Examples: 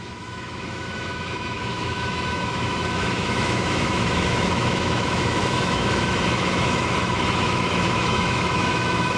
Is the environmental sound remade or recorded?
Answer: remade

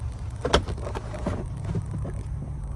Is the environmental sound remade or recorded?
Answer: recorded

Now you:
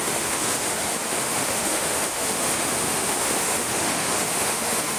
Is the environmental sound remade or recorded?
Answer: remade